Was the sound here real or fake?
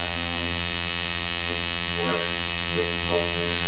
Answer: fake